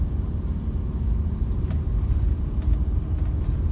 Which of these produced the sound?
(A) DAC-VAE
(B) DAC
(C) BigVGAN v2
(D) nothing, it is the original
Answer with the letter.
D